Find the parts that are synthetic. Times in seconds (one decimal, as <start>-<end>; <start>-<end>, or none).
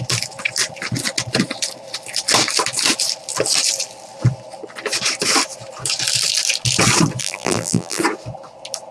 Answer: 7.2-8.0